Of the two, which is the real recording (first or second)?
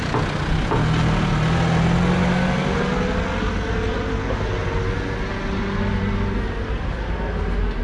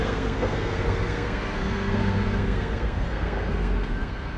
first